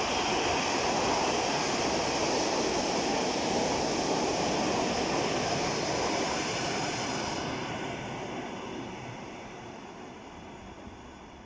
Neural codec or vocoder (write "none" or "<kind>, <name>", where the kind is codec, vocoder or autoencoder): none